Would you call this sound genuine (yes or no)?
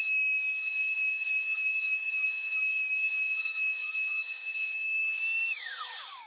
no